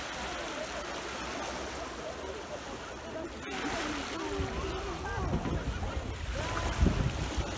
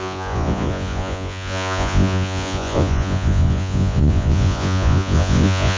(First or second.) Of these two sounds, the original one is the first